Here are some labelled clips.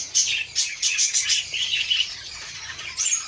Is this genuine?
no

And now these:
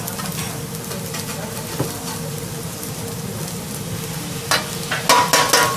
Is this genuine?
yes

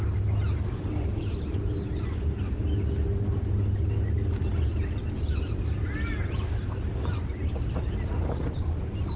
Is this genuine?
yes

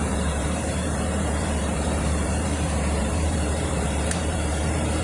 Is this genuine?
no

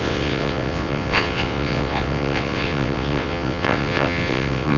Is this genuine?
no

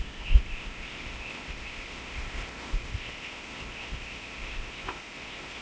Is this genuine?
no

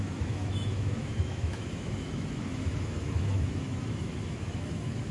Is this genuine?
no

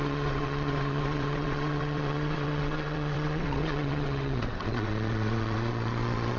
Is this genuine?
no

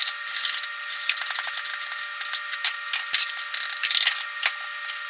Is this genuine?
yes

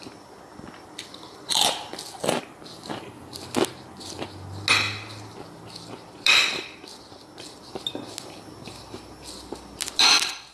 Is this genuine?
yes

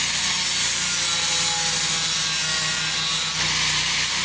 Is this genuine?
yes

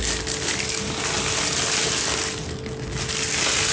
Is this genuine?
yes